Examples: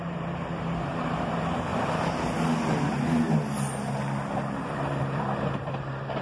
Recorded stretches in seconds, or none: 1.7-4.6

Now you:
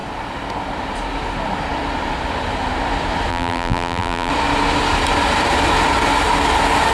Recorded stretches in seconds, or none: 0.0-3.3; 4.3-6.9

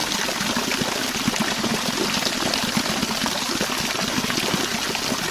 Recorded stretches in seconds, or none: 0.0-5.3